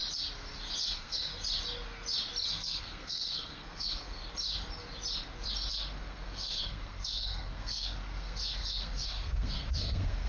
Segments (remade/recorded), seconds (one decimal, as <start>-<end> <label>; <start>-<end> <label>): 0.0-0.8 recorded; 0.8-1.3 remade; 1.3-2.5 recorded; 2.5-4.2 remade; 4.2-5.7 recorded; 5.7-10.3 remade